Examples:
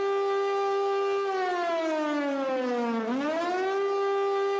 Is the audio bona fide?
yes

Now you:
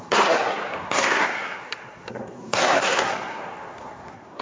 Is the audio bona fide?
no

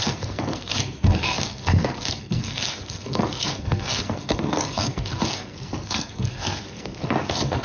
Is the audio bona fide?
no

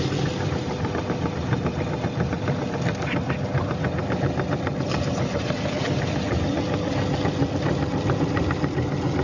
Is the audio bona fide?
yes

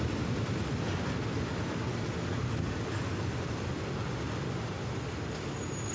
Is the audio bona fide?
yes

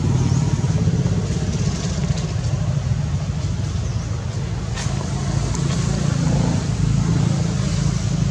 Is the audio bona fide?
yes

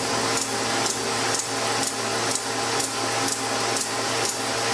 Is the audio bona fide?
yes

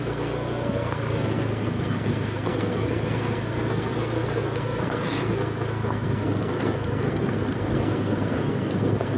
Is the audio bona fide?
no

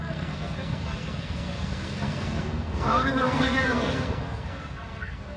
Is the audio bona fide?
no